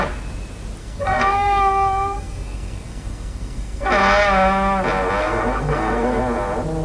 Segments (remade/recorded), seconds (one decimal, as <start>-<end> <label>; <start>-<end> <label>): 0.0-0.8 recorded; 0.8-3.9 remade; 3.9-5.2 recorded; 5.2-6.2 remade; 6.2-6.8 recorded